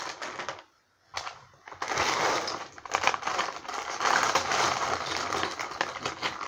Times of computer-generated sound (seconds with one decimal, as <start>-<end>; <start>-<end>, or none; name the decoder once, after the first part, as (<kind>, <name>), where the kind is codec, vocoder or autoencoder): none